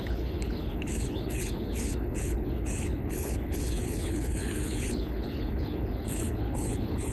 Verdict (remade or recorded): remade